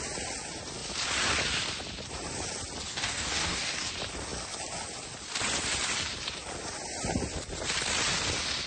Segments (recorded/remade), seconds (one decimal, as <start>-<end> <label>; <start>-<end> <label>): 0.0-2.9 recorded; 2.9-3.9 remade; 3.9-8.7 recorded